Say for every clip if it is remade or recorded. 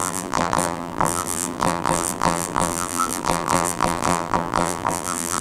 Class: remade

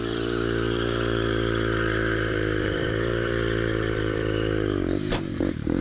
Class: remade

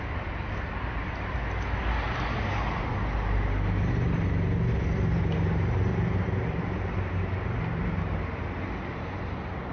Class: recorded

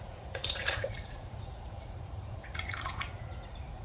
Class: remade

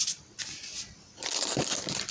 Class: recorded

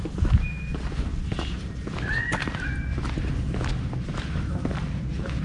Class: recorded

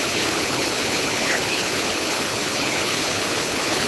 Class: remade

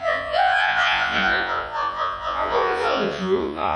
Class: remade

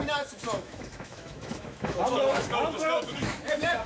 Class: remade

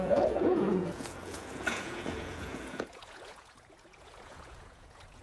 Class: remade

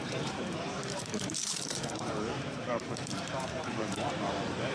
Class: remade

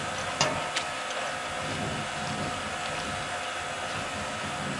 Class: recorded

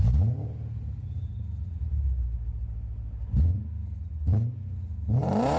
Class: recorded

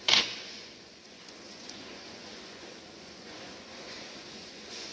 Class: remade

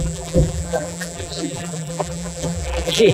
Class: remade